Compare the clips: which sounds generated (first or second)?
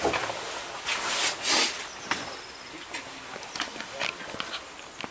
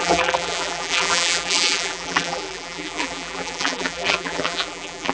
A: second